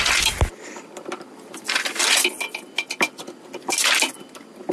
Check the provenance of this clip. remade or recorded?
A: recorded